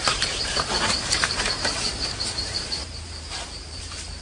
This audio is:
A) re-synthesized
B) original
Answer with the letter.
A